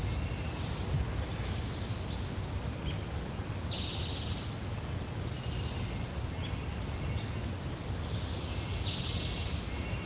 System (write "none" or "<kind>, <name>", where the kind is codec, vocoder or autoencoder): none